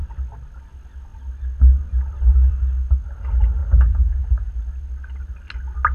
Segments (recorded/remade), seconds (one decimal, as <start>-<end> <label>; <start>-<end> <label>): 0.0-3.6 recorded; 3.6-4.5 remade; 4.5-5.9 recorded